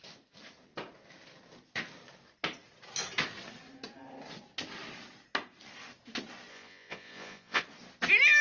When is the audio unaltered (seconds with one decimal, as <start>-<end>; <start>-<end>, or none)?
0.0-6.5; 7.6-8.4